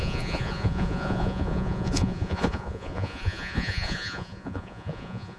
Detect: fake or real fake